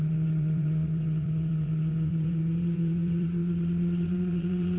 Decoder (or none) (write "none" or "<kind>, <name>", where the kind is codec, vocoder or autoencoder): vocoder, WaveNeXt